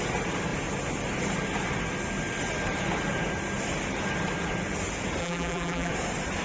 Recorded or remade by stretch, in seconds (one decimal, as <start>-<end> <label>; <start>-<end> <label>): 0.0-5.2 recorded; 5.2-5.9 remade; 5.9-6.4 recorded